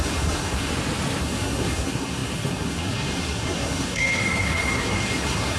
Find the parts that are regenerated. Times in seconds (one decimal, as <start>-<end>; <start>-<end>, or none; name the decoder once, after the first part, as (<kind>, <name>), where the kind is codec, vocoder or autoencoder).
0.0-0.7 (codec, SNAC); 1.2-5.6